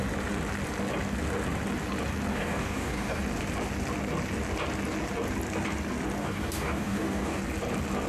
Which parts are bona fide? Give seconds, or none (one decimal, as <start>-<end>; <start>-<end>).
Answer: 0.0-2.3; 3.2-6.2; 7.4-8.1